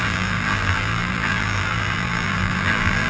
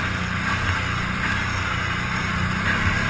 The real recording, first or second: second